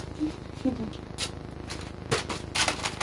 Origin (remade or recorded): recorded